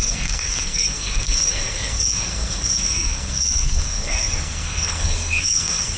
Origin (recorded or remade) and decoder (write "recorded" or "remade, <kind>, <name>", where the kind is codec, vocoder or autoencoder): remade, codec, SNAC